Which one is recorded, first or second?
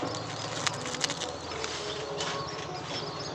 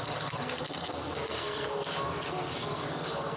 first